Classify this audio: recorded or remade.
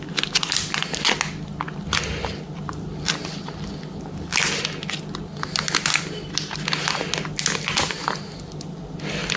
recorded